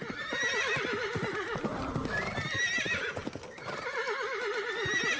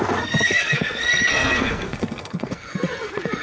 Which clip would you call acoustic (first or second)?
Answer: first